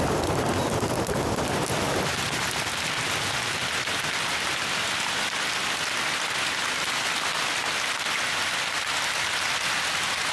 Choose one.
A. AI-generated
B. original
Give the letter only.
B